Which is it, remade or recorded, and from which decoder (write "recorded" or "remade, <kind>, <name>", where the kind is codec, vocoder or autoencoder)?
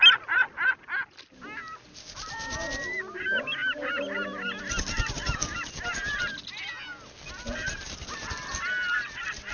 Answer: recorded